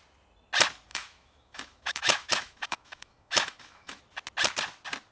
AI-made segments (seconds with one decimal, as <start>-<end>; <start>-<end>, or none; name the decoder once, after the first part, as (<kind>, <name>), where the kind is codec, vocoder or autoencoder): 0.9-4.0 (autoencoder, DAC-VAE)